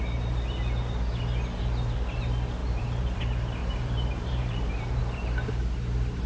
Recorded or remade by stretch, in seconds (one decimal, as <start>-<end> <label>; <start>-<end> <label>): 0.0-2.6 recorded; 2.6-3.2 remade; 3.2-3.6 recorded; 3.6-5.0 remade; 5.0-6.3 recorded